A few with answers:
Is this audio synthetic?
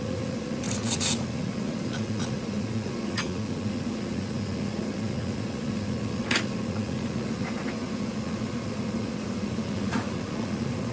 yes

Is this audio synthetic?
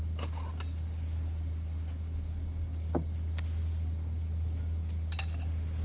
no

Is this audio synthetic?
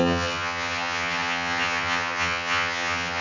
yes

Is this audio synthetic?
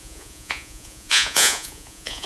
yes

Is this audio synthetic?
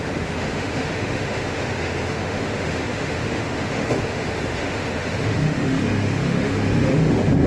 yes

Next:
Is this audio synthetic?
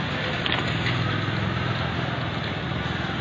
no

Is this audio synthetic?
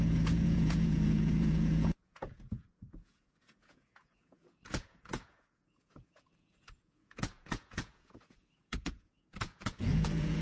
yes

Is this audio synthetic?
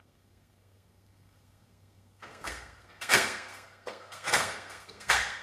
yes